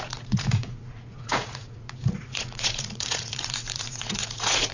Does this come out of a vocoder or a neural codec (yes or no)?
yes